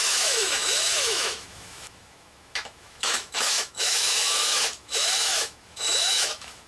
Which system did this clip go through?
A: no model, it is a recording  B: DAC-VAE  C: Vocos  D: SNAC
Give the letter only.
B